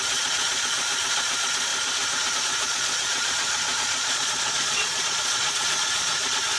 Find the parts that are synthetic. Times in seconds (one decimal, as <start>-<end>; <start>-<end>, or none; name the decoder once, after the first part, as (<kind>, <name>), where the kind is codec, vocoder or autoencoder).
0.0-1.7 (vocoder, Vocos); 2.3-6.6